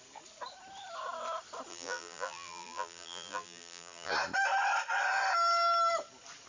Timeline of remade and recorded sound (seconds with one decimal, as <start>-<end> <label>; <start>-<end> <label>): 0.0-1.7 recorded; 1.7-4.1 remade; 4.1-6.5 recorded